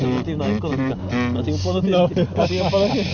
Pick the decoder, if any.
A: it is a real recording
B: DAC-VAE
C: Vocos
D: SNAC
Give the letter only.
A